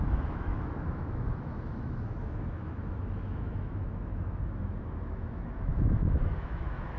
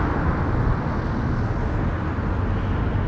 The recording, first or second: second